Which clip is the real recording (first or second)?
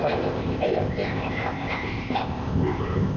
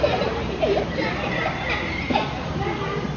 second